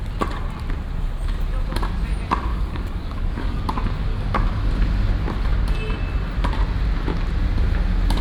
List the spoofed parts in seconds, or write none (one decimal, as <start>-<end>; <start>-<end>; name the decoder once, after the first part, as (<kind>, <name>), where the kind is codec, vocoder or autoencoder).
2.5-3.6 (codec, DAC); 4.1-4.7